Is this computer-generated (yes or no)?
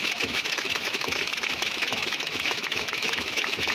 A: yes